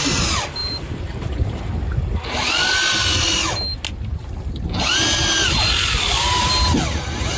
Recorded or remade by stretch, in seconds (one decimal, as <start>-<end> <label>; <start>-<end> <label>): 0.0-0.6 recorded; 0.6-1.6 remade; 1.6-7.4 recorded